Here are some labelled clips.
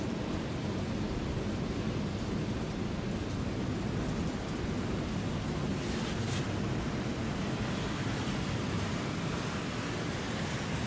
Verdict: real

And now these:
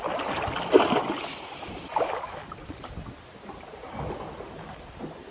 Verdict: real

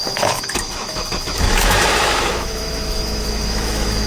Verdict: fake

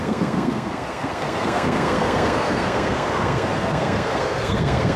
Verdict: fake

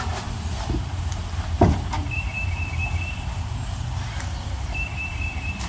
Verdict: fake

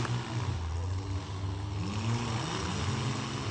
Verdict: real